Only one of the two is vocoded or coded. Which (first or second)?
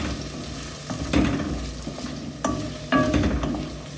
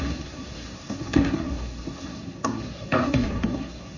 second